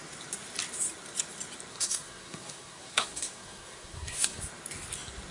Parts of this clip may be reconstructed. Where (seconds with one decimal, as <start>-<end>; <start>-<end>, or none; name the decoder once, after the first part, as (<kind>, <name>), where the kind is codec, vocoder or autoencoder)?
1.7-4.4 (codec, SNAC)